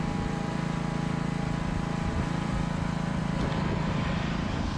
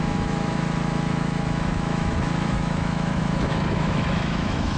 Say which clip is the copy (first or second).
second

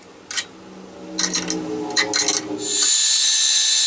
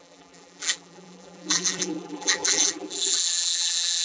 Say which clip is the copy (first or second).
second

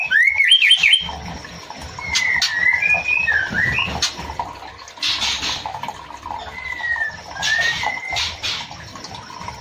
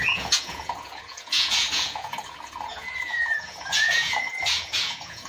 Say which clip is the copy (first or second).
second